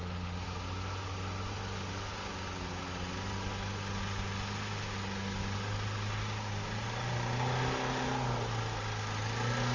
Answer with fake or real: real